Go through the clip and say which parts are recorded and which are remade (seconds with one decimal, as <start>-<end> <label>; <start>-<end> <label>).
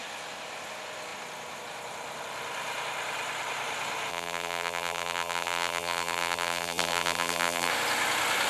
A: 0.0-4.1 recorded; 4.1-7.7 remade; 7.7-8.5 recorded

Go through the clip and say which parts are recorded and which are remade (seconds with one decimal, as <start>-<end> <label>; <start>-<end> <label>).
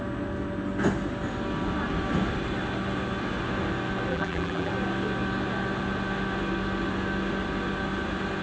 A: 0.0-4.1 recorded; 4.1-4.7 remade; 4.7-8.4 recorded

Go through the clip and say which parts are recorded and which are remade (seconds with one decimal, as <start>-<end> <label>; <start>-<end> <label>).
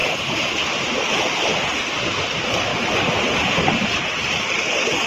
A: 0.0-5.1 recorded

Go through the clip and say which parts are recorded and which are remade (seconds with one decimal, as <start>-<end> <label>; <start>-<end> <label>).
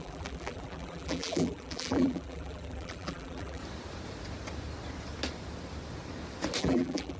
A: 0.0-3.6 remade; 3.6-6.6 recorded; 6.6-7.2 remade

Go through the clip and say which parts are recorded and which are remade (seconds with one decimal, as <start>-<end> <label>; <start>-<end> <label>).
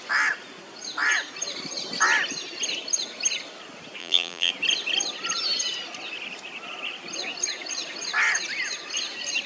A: 0.0-4.0 recorded; 4.0-4.5 remade; 4.5-9.5 recorded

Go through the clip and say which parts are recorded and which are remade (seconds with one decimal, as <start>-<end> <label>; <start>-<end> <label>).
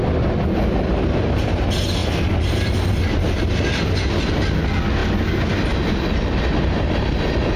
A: 0.0-7.6 recorded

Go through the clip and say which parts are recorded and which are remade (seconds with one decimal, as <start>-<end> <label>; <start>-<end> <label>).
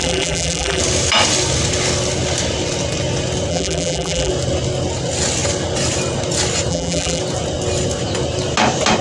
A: 0.0-0.8 remade; 0.8-3.5 recorded; 3.5-4.3 remade; 4.3-6.7 recorded; 6.7-7.2 remade; 7.2-9.0 recorded